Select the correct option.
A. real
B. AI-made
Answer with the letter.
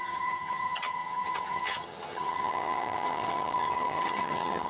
B